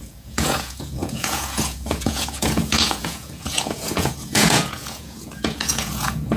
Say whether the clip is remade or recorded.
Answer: remade